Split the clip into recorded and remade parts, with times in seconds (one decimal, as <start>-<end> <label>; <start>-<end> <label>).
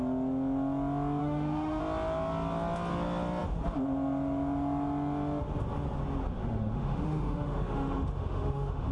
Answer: 0.0-1.2 recorded; 1.2-1.8 remade; 1.8-6.4 recorded; 6.4-8.9 remade